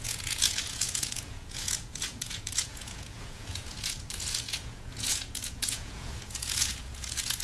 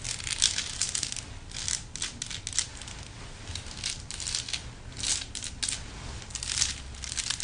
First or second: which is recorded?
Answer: second